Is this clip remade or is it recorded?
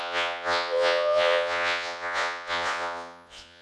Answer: remade